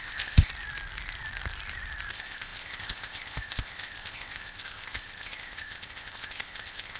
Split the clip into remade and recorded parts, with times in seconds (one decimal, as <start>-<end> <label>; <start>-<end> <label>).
0.0-0.5 remade; 0.5-2.1 recorded; 2.1-7.0 remade